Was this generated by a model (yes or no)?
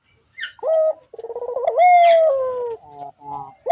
no